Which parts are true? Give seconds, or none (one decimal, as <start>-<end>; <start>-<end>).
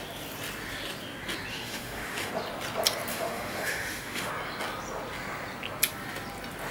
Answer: 0.0-1.5; 2.3-3.1; 4.3-6.7